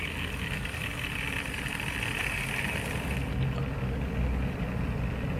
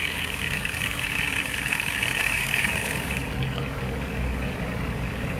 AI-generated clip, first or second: second